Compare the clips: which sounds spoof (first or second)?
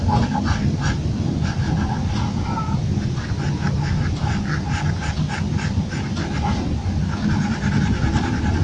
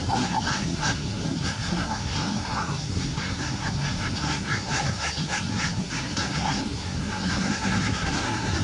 second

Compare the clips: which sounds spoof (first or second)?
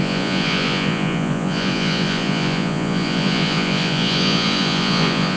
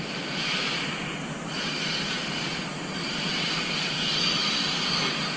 first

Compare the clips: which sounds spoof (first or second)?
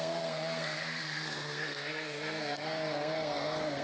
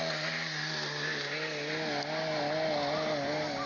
first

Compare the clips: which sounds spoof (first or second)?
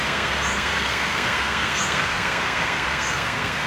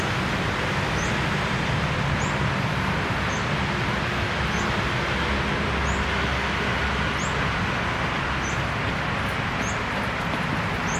first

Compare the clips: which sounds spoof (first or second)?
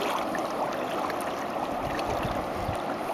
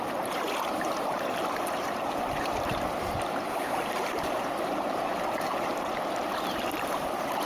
second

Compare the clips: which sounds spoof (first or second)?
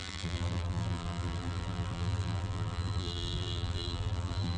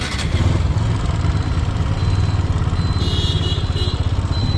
first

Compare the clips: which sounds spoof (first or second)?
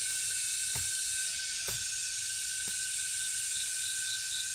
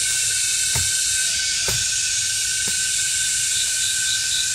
second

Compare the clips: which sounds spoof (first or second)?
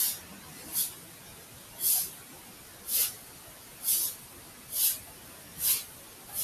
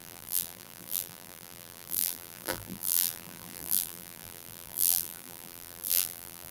second